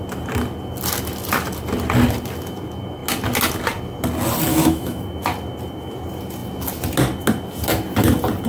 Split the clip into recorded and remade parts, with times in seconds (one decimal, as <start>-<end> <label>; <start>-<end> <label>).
0.0-4.5 recorded; 4.5-5.0 remade; 5.0-8.5 recorded